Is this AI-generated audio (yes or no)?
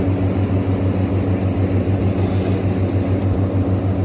no